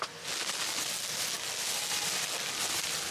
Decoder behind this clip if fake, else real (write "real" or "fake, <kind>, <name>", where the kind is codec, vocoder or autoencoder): real